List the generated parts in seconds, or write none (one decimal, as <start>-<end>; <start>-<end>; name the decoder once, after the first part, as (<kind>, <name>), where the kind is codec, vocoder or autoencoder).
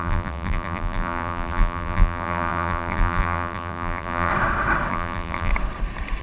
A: 0.0-4.3 (vocoder, BigVGAN v2); 4.9-5.5